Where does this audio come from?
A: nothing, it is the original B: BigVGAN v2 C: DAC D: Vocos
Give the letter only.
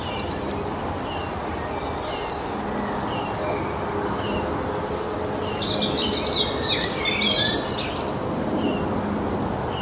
A